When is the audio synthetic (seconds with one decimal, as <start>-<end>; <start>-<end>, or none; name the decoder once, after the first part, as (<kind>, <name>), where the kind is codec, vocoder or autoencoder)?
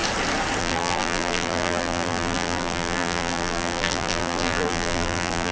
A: 0.6-5.5 (vocoder, BigVGAN v2)